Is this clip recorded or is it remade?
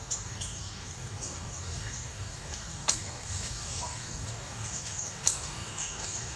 remade